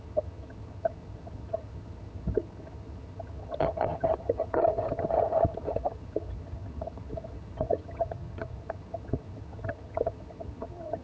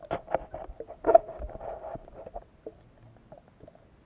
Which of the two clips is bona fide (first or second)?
second